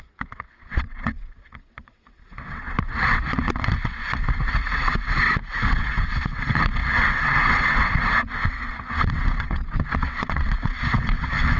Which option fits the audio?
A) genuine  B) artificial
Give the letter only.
B